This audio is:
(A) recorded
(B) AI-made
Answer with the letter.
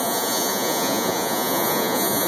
B